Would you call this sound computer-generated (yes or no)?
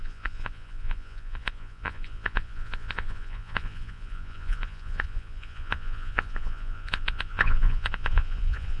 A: yes